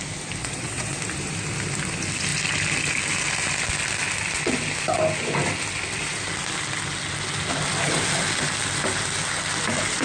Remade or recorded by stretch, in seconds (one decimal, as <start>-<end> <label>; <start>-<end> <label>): 0.0-0.4 recorded; 0.4-1.0 remade; 1.0-10.0 recorded